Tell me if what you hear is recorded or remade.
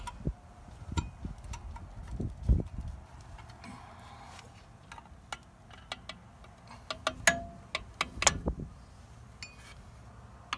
recorded